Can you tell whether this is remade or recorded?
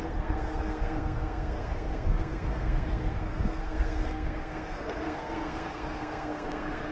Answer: remade